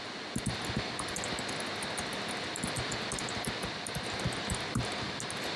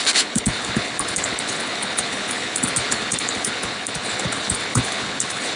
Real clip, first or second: first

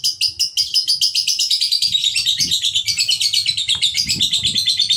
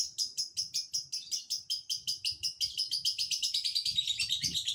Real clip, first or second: first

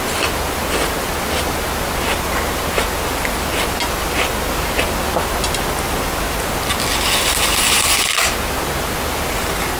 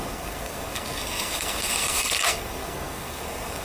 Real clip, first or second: first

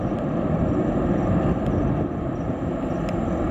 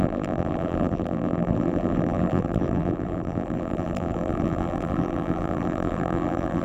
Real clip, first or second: first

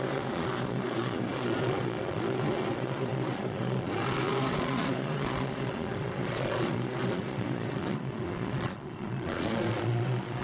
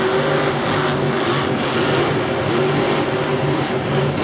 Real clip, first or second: second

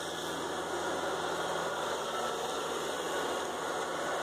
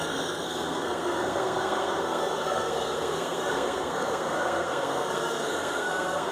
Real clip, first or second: first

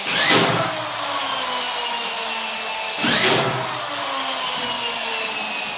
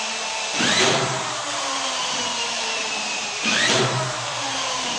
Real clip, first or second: first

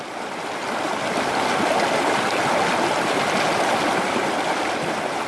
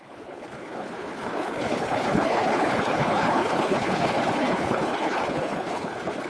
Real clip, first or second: first